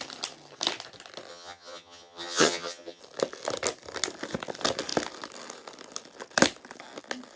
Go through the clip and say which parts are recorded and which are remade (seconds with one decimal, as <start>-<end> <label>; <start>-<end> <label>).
0.0-1.3 recorded; 1.3-3.0 remade; 3.0-7.4 recorded